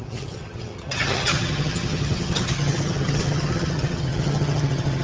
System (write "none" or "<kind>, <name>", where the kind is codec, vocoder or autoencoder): vocoder, HiFi-GAN